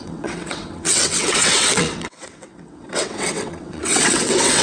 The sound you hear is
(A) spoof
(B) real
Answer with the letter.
A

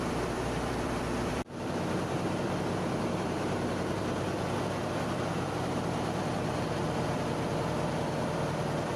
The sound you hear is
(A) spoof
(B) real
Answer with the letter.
A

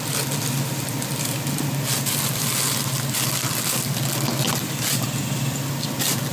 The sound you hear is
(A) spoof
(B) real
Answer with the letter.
B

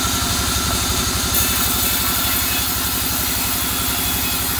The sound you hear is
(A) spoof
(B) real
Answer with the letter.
B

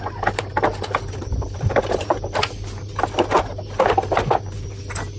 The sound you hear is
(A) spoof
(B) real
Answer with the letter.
B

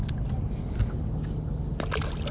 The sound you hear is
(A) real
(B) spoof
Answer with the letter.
A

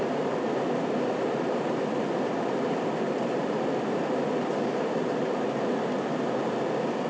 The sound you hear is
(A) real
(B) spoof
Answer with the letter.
A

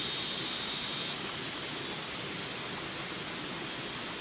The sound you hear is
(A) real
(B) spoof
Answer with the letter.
A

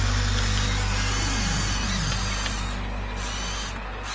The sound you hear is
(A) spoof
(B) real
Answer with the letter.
B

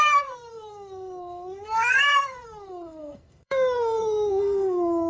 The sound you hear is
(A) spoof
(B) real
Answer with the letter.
A